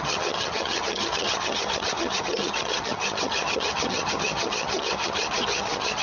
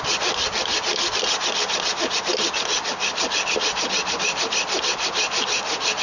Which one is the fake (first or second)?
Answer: first